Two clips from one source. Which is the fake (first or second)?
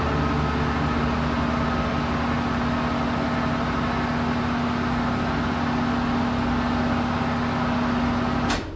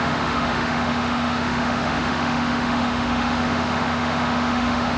second